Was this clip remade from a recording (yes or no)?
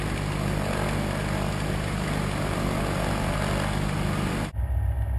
no